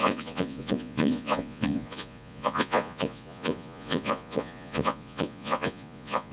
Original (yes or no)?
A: no